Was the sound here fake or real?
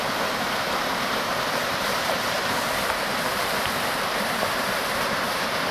real